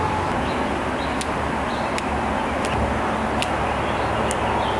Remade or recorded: recorded